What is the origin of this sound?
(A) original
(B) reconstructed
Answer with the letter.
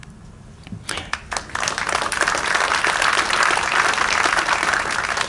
A